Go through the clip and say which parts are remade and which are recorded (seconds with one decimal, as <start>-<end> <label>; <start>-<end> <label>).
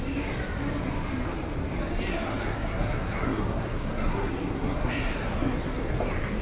0.0-2.1 recorded; 2.1-5.9 remade; 5.9-6.4 recorded